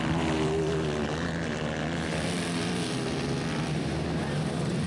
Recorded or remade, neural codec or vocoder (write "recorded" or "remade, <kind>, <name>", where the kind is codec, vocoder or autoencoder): recorded